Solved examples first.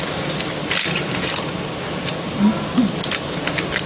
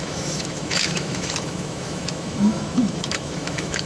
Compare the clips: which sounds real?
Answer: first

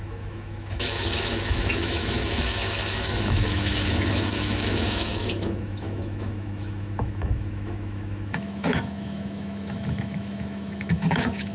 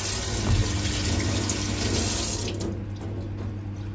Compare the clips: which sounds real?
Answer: second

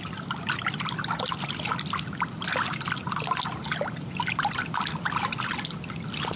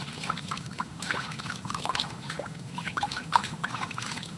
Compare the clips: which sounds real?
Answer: first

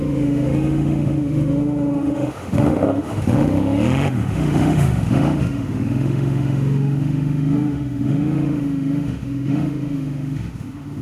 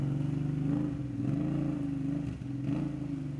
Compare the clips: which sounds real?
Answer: second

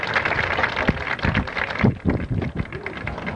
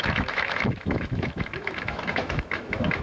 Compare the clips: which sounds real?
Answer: first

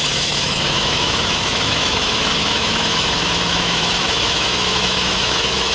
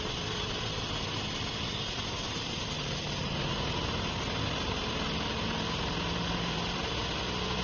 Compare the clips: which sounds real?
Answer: second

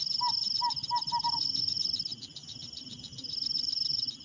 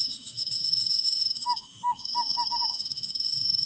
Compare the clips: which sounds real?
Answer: first